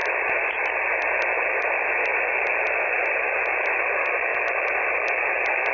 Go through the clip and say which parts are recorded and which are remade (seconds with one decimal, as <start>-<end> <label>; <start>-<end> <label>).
0.0-0.7 remade; 0.7-2.1 recorded; 2.1-2.8 remade; 2.8-4.3 recorded; 4.3-5.1 remade; 5.1-5.7 recorded